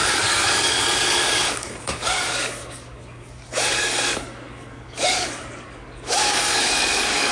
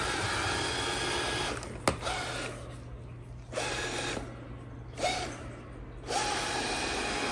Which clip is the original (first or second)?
second